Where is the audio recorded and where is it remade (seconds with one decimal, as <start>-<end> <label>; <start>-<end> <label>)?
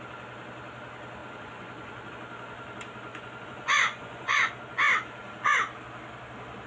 0.0-1.2 recorded; 1.2-2.1 remade; 2.1-3.1 recorded; 3.1-4.5 remade; 4.5-6.7 recorded